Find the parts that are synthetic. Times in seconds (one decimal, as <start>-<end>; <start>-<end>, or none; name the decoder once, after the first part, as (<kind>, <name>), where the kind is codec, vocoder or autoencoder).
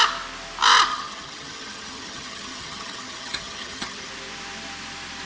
0.9-4.1 (vocoder, HiFi-GAN)